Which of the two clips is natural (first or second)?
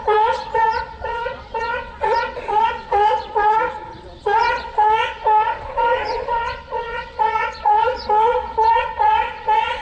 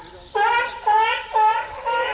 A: second